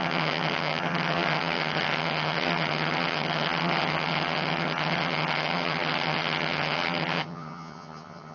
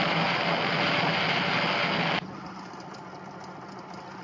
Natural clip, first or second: second